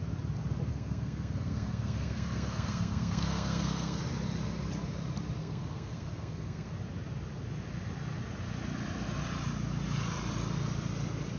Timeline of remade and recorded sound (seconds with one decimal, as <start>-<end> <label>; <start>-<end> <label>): 0.0-0.7 recorded; 0.7-4.0 remade; 4.0-5.4 recorded; 5.4-6.7 remade; 6.7-11.4 recorded